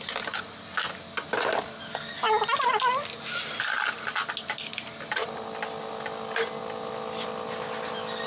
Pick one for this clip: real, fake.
real